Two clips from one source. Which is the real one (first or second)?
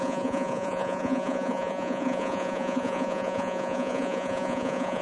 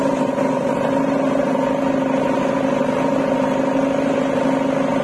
second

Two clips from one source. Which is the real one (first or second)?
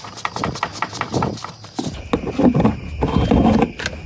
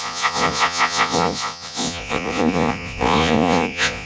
first